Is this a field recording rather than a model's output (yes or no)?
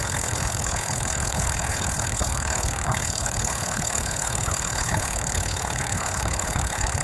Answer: no